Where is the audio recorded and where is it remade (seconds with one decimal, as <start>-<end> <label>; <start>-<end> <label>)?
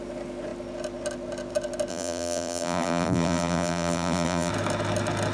0.0-1.9 recorded; 1.9-4.5 remade; 4.5-5.3 recorded